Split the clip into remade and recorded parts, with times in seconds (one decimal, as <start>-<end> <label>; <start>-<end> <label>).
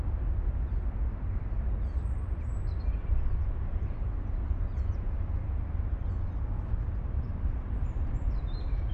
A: 0.0-3.7 recorded; 3.7-6.0 remade; 6.0-7.3 recorded; 7.3-8.9 remade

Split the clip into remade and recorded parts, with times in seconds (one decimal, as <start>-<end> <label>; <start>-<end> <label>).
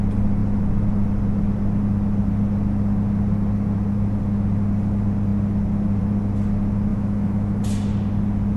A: 0.0-6.9 recorded; 6.9-7.6 remade; 7.6-8.6 recorded